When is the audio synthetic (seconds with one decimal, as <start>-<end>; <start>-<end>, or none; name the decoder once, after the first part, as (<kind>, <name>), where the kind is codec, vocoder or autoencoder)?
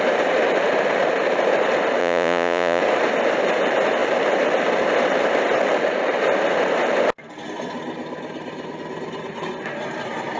2.0-2.8 (vocoder, Vocos)